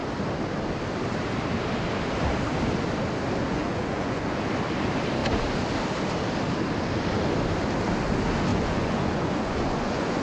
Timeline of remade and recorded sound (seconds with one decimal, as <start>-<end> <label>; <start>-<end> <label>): 0.0-3.4 recorded; 3.4-4.4 remade; 4.4-8.5 recorded; 8.5-10.2 remade